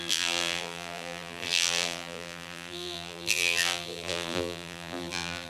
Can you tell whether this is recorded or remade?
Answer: remade